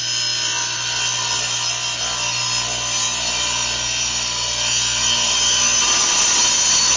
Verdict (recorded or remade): recorded